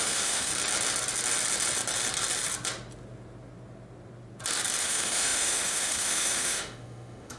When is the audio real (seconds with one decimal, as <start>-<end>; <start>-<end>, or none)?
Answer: 0.5-4.8